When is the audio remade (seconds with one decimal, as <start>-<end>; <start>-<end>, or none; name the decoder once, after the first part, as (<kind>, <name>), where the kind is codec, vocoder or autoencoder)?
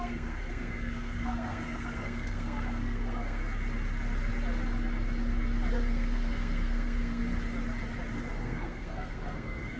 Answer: 0.0-3.4 (codec, SNAC); 5.7-7.2; 8.4-9.8